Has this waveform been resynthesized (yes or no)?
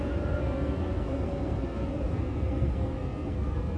yes